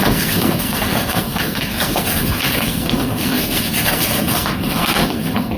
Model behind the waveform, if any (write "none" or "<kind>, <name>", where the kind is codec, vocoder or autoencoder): codec, SNAC